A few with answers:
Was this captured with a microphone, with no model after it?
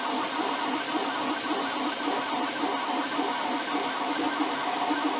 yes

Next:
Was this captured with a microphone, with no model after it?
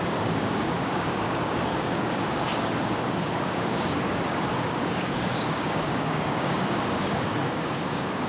no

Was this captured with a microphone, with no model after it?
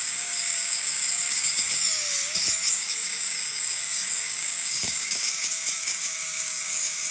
no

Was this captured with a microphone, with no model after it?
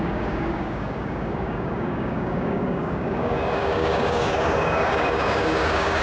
no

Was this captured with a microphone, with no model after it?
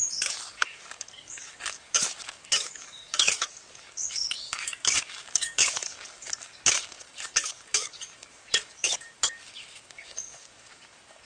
no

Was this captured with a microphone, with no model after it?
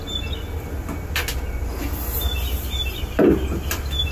yes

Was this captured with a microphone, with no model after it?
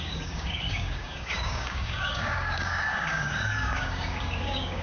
no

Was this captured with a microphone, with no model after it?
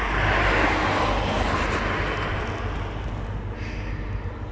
yes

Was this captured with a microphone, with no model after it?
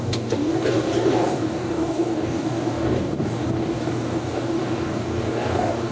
no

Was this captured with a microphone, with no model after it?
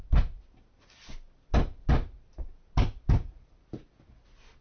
yes